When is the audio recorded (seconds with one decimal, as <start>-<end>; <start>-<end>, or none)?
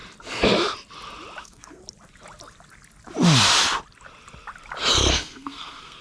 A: 0.0-1.4; 1.8-5.1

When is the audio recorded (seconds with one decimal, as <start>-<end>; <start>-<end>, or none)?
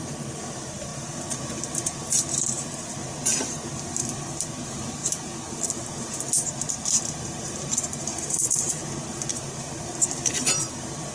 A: none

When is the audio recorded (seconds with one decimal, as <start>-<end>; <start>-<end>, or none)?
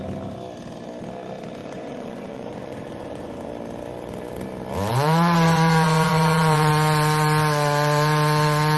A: 0.0-1.6; 3.5-4.9; 6.7-8.8